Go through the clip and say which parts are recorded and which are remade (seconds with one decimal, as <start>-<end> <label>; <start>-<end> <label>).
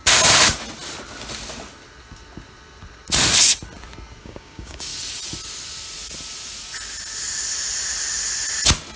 0.0-4.2 recorded; 4.2-4.9 remade; 4.9-9.0 recorded